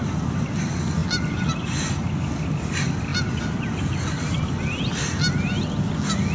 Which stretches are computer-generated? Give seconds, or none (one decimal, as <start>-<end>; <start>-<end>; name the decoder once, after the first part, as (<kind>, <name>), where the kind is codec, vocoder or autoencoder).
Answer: none